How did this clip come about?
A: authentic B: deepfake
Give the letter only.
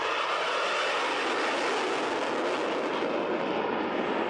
A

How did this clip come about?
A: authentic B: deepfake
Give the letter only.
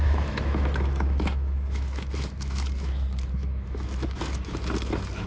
B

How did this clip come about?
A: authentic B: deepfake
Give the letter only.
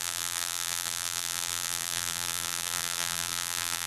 B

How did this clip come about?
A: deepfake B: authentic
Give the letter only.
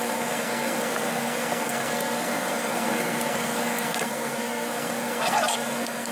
A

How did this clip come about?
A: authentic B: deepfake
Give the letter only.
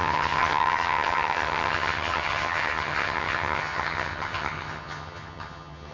B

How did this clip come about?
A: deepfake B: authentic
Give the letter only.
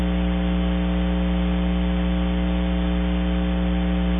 B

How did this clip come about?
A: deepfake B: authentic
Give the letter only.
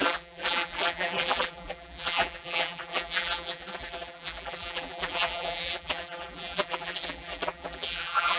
A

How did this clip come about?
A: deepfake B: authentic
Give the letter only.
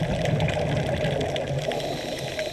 B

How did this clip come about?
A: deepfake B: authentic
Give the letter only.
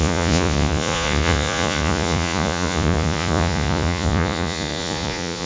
A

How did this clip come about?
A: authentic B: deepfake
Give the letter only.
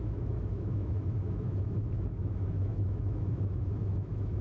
B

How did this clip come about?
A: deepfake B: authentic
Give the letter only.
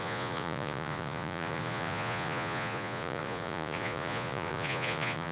A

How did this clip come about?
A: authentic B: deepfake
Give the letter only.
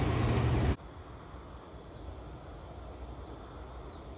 A